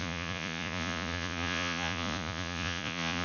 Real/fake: fake